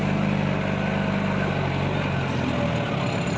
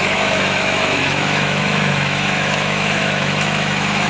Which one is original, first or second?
first